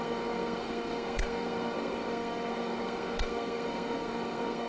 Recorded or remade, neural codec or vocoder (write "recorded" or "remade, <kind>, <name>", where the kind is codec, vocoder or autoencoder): remade, codec, SNAC